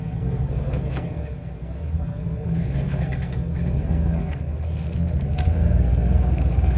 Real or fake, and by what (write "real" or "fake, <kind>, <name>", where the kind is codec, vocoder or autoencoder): fake, codec, SNAC